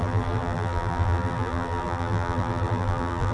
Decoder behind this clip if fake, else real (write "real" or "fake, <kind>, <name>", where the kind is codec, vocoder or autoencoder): fake, vocoder, BigVGAN v2